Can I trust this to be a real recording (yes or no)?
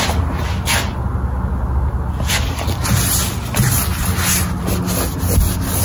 yes